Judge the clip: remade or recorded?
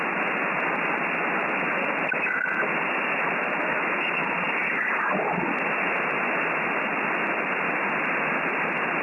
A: recorded